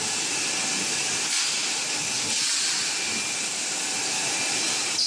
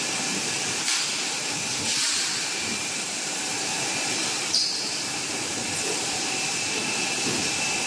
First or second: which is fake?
second